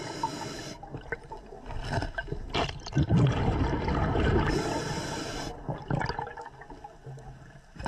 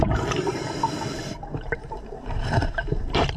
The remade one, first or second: second